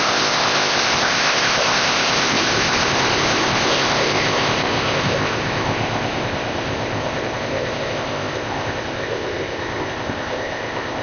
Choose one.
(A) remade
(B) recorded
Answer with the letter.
A